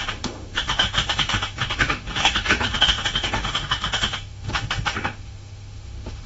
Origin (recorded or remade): remade